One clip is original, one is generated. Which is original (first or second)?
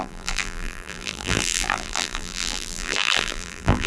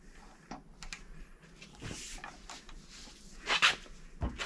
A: second